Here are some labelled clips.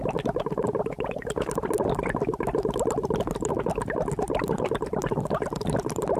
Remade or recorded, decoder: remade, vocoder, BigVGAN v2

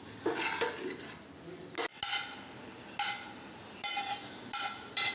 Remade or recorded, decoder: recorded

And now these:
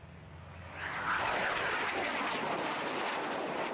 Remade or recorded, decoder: recorded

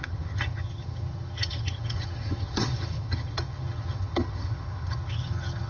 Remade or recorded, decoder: remade, vocoder, HiFi-GAN